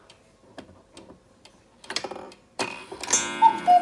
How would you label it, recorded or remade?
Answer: recorded